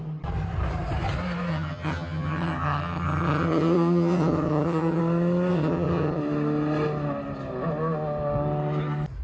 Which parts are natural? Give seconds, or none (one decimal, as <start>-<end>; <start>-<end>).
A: 0.0-1.5; 5.0-5.5; 6.2-9.2